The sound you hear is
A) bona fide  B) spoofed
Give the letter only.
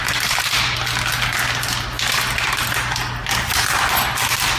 A